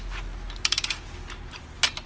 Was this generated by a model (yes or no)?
no